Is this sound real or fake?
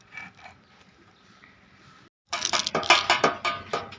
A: real